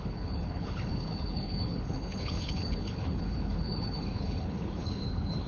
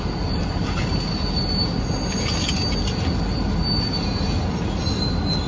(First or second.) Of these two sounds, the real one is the second